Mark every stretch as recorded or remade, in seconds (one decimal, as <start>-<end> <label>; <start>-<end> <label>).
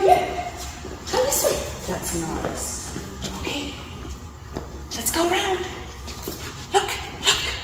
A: 0.0-2.4 recorded; 2.4-4.1 remade; 4.1-4.8 recorded; 4.8-6.2 remade; 6.2-7.6 recorded